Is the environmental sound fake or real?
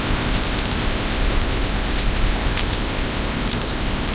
fake